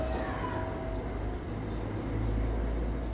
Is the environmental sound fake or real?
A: real